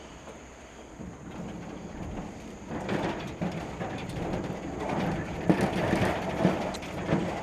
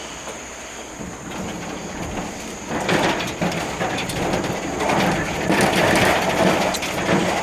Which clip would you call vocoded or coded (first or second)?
first